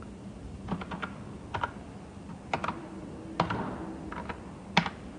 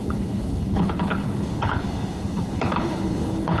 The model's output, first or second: second